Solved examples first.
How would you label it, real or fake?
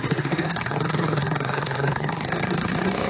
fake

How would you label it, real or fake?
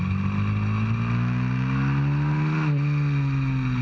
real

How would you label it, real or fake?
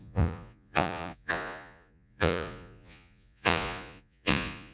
fake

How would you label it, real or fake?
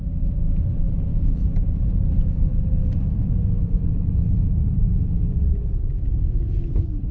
fake